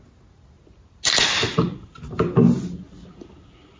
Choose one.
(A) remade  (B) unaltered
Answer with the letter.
B